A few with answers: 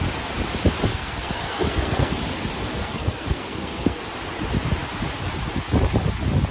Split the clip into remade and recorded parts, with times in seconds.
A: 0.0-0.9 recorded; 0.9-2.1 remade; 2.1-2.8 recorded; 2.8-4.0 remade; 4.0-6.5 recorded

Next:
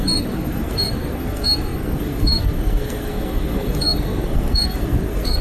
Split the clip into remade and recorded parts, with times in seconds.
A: 0.0-5.4 remade

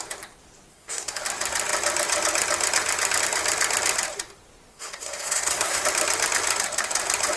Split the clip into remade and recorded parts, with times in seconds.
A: 0.0-0.7 recorded; 0.7-1.2 remade; 1.2-4.7 recorded; 4.7-5.8 remade; 5.8-7.4 recorded

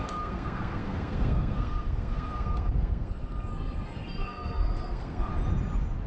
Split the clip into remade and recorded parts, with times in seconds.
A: 0.0-5.3 remade; 5.3-6.1 recorded

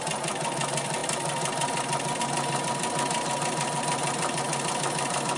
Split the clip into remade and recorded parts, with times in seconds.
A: 0.0-5.4 recorded

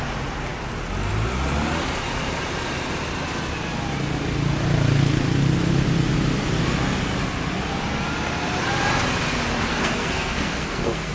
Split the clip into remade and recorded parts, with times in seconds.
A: 0.0-9.7 recorded; 9.7-11.1 remade

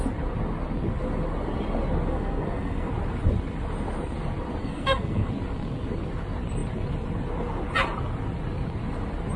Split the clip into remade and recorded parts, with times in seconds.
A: 0.0-2.1 recorded; 2.1-2.9 remade; 2.9-4.6 recorded; 4.6-5.3 remade; 5.3-9.4 recorded